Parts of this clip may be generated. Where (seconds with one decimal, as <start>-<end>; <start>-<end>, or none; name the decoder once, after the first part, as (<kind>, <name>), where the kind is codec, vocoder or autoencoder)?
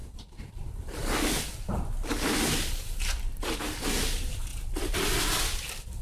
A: 0.0-3.6 (vocoder, BigVGAN v2)